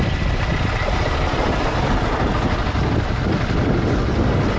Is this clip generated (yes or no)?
no